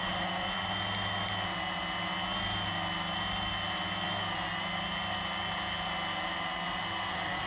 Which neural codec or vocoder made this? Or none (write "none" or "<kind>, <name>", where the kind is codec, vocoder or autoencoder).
none